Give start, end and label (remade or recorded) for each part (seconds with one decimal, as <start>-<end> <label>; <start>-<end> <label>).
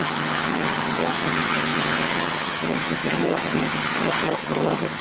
0.0-5.0 remade